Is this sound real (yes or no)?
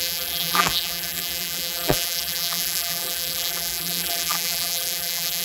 no